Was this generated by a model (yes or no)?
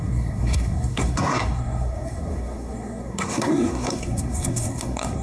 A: yes